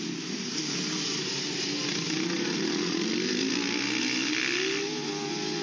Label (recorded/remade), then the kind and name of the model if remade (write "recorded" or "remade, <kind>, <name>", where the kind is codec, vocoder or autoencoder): recorded